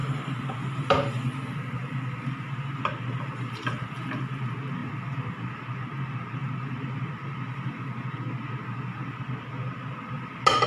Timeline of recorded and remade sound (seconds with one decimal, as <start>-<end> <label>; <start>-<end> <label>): 0.0-3.9 remade; 3.9-4.8 recorded; 4.8-5.8 remade; 5.8-6.4 recorded; 6.4-7.0 remade; 7.0-10.7 recorded